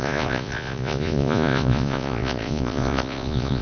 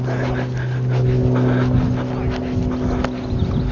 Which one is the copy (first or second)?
first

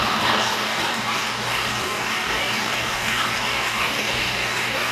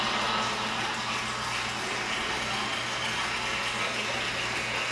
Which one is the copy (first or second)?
first